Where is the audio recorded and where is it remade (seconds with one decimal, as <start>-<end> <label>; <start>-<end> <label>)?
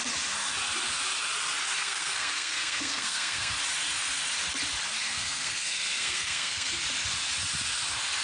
0.0-1.8 recorded; 1.8-3.5 remade; 3.5-5.0 recorded; 5.0-6.8 remade; 6.8-8.2 recorded